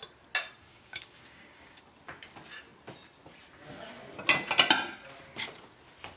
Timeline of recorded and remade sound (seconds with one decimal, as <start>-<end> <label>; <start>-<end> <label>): 0.0-0.7 recorded; 0.7-1.8 remade; 1.8-6.2 recorded

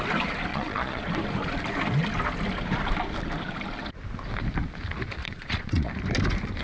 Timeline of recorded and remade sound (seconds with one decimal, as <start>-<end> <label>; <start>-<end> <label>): 0.0-0.5 recorded; 0.5-1.0 remade; 1.0-5.2 recorded; 5.2-5.9 remade; 5.9-6.6 recorded

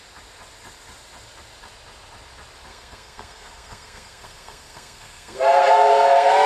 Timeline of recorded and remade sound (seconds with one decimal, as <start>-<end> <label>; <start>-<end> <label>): 0.0-2.7 recorded; 2.7-6.5 remade

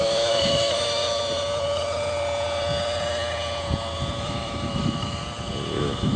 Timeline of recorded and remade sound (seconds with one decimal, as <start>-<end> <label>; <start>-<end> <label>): 0.0-1.0 remade; 1.0-4.2 recorded; 4.2-5.2 remade; 5.2-5.8 recorded; 5.8-6.2 remade